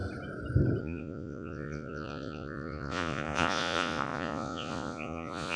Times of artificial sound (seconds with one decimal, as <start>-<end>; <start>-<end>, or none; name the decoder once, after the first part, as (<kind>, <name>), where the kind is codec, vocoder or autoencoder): 0.8-5.6 (vocoder, Vocos)